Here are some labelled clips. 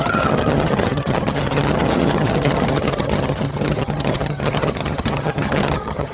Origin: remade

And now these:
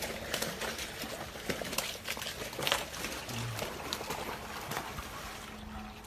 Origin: recorded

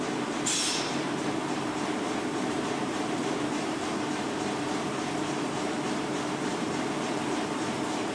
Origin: remade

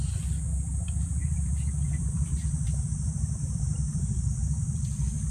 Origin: remade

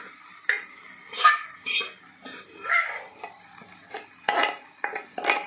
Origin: recorded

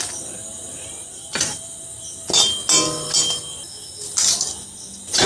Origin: recorded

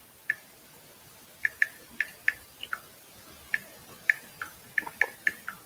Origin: recorded